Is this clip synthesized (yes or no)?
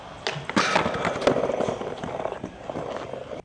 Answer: no